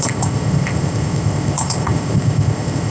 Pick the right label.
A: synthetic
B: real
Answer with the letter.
A